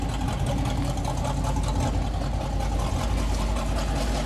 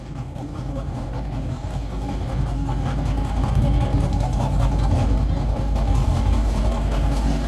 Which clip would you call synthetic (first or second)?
second